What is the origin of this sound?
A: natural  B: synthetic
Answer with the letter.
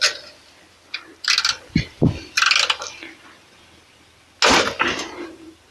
A